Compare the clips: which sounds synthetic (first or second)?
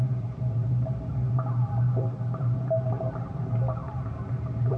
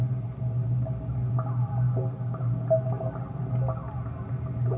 first